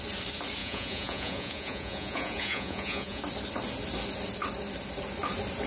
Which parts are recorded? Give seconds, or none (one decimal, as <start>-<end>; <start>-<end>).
0.0-0.6; 3.2-5.7